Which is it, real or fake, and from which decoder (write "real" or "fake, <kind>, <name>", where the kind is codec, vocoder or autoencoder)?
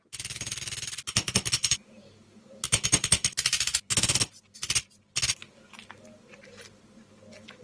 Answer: real